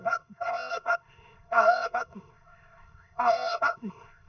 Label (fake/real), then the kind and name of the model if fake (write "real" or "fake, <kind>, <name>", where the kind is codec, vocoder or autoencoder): fake, codec, ZipCodec